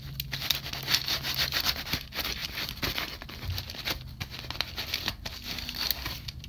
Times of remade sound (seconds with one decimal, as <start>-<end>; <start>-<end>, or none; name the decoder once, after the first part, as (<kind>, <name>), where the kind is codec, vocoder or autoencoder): none